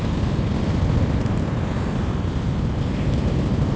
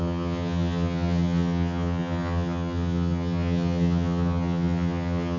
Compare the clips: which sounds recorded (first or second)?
first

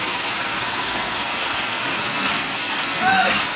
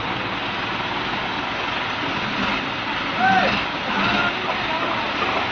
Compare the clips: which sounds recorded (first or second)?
second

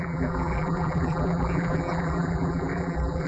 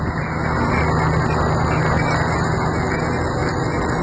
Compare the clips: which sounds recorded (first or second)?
second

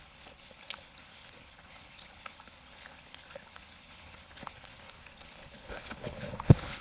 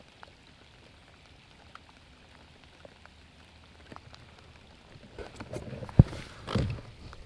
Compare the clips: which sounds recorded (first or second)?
second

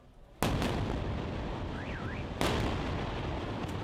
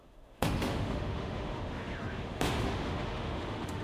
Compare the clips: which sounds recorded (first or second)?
first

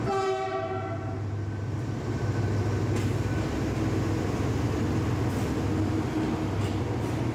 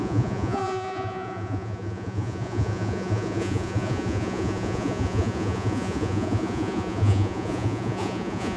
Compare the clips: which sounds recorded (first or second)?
first